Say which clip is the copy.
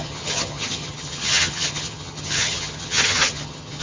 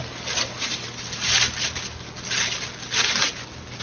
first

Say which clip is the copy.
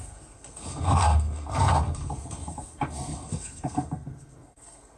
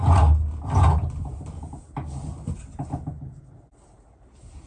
first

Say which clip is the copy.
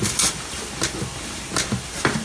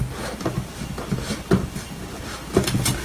first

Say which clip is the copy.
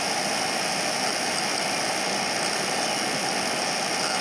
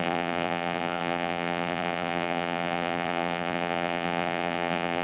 second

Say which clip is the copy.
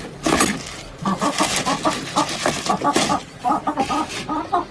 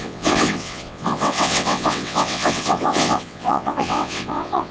second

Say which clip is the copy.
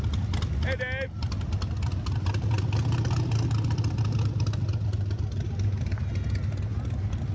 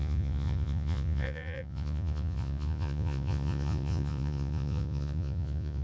second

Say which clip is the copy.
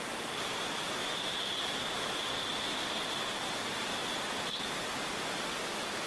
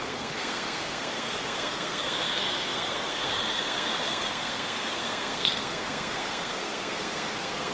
second